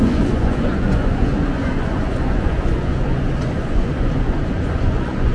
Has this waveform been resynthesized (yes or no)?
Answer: yes